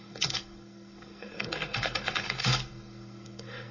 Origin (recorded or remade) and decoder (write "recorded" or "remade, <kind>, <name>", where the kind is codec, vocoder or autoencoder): remade, codec, SNAC